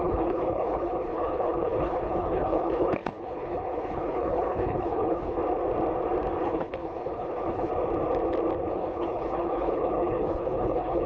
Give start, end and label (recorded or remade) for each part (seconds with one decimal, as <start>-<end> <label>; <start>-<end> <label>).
0.0-5.4 remade; 5.4-6.4 recorded; 6.4-7.7 remade; 7.7-8.7 recorded; 8.7-11.1 remade